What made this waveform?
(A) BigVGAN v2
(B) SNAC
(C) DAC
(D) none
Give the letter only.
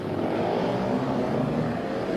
C